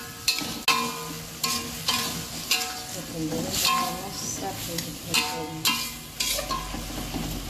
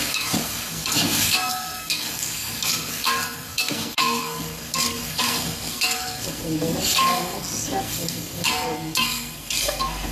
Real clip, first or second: first